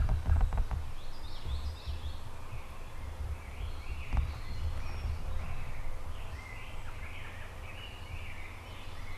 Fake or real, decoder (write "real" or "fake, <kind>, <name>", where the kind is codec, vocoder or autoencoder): real